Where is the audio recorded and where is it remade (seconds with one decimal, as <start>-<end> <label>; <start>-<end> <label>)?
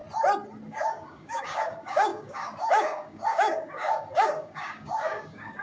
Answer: 0.0-0.7 recorded; 0.7-5.6 remade